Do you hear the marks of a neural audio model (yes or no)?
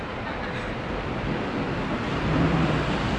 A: no